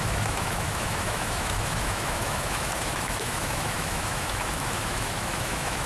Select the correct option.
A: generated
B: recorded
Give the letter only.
A